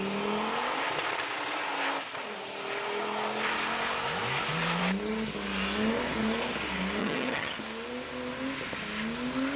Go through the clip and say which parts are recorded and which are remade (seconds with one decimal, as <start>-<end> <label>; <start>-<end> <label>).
0.0-7.0 recorded; 7.0-7.6 remade; 7.6-9.6 recorded